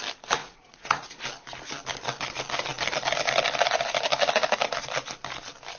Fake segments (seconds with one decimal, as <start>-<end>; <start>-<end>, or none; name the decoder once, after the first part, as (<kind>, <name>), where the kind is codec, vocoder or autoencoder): 0.4-1.2 (vocoder, Vocos)